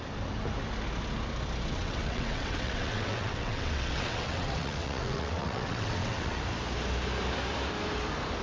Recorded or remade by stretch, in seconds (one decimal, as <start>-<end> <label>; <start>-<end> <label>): 0.0-1.7 recorded; 1.7-6.4 remade; 6.4-8.4 recorded